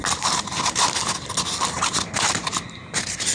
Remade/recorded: recorded